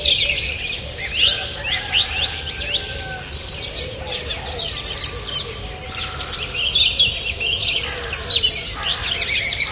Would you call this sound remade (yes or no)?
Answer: no